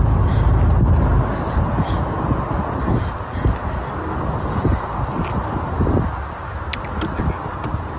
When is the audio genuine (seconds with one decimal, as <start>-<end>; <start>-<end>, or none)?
0.0-8.0

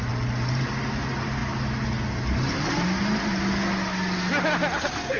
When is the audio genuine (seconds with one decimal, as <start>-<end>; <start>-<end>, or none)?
0.0-5.2

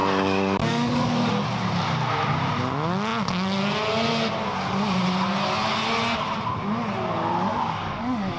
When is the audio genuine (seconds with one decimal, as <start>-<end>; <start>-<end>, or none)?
1.3-7.5